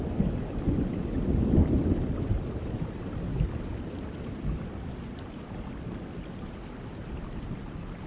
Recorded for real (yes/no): yes